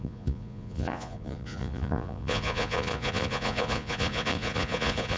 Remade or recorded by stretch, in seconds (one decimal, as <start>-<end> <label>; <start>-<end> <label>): 0.0-5.2 remade